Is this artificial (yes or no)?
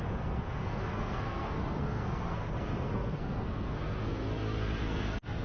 yes